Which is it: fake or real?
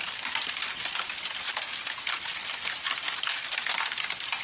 real